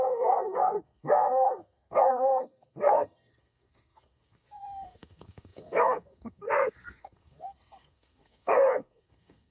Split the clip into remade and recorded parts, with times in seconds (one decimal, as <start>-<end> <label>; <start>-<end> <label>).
0.0-9.5 remade

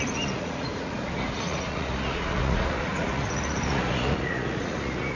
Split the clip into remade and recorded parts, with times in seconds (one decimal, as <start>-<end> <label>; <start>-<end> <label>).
0.0-5.2 remade